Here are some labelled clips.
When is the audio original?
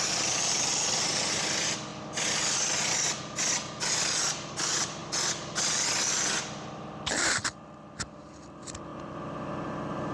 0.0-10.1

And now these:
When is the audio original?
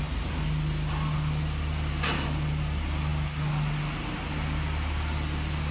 0.0-5.7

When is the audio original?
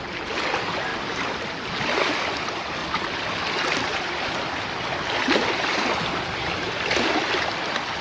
0.0-8.0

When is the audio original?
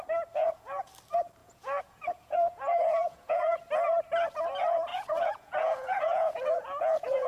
0.0-0.4; 0.9-1.4; 3.6-4.9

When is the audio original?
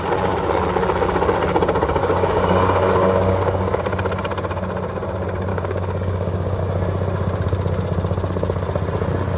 0.0-2.0; 3.8-5.5; 6.6-9.4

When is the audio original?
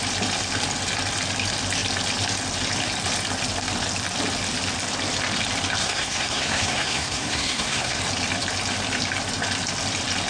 0.0-5.8; 8.0-10.3